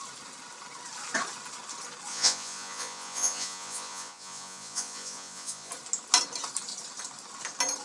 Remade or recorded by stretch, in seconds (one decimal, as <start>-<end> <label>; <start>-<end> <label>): 0.0-2.1 recorded; 2.1-5.7 remade; 5.7-7.8 recorded